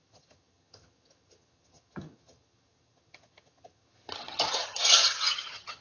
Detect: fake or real fake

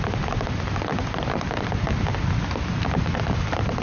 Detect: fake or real real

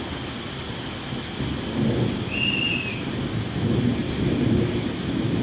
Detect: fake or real real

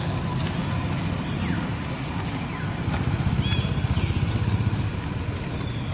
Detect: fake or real real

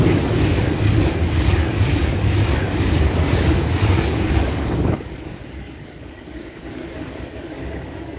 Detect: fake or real fake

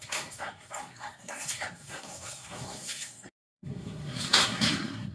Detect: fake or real fake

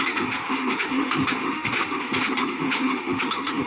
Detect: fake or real fake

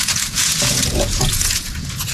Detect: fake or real fake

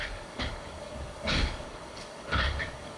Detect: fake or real fake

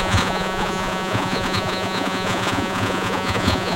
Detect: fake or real fake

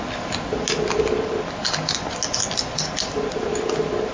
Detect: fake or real real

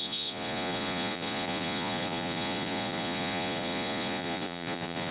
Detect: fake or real fake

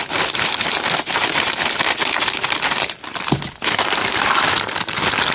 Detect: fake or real real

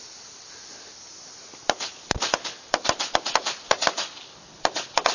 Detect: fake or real real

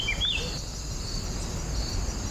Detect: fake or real real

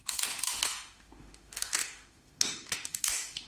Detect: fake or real fake